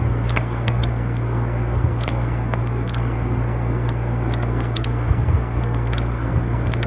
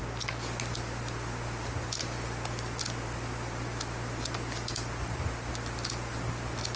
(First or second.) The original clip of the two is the second